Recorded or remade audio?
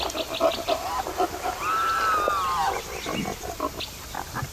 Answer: recorded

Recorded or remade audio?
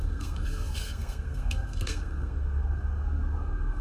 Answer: remade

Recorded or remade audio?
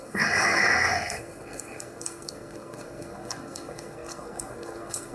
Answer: remade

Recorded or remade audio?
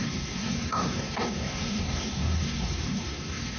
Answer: remade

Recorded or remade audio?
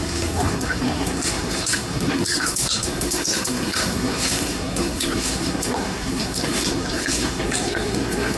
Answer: remade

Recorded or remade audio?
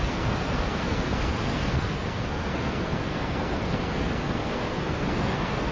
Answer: remade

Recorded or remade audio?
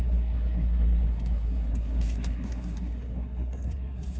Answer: remade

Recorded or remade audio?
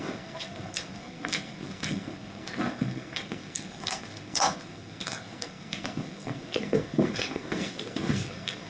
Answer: remade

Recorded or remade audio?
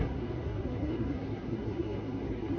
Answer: remade